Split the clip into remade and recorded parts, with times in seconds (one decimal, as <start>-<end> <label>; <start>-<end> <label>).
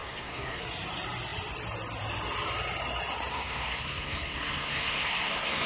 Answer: 0.0-0.6 remade; 0.6-3.3 recorded; 3.3-5.7 remade